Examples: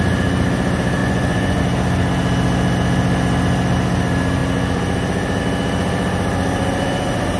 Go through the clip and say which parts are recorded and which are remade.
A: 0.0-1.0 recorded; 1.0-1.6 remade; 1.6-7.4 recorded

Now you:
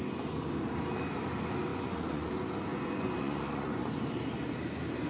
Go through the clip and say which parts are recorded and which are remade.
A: 0.0-1.7 recorded; 1.7-2.3 remade; 2.3-2.7 recorded; 2.7-4.0 remade; 4.0-5.1 recorded